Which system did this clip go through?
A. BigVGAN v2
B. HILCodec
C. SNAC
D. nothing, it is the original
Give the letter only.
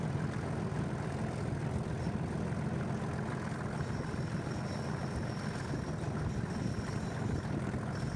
D